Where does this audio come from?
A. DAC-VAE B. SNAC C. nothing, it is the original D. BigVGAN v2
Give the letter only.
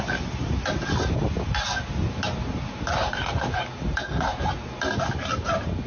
C